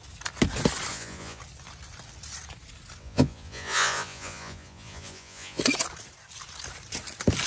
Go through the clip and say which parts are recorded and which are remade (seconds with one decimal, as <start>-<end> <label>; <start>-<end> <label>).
0.0-0.9 recorded; 0.9-1.4 remade; 1.4-3.0 recorded; 3.0-5.6 remade; 5.6-7.5 recorded